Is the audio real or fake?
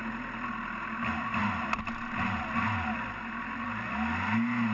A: real